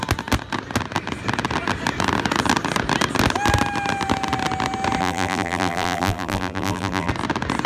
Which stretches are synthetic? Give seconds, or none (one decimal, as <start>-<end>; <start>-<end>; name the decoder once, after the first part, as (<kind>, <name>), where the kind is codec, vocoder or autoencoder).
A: 5.0-7.1 (vocoder, BigVGAN v2)